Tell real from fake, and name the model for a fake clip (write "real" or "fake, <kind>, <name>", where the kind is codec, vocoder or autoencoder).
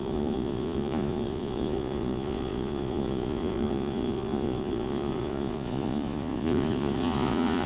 fake, vocoder, Vocos